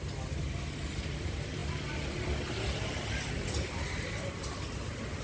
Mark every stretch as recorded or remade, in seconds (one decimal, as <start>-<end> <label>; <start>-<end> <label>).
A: 0.0-5.2 recorded